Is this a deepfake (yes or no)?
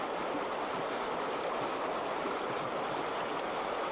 no